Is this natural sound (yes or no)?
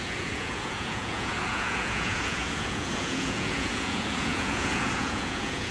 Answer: no